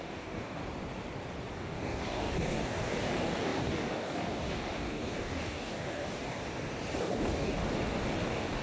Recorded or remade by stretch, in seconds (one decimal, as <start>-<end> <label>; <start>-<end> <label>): 0.0-0.6 remade; 0.6-1.5 recorded; 1.5-6.4 remade; 6.4-7.0 recorded; 7.0-7.6 remade; 7.6-8.2 recorded; 8.2-8.6 remade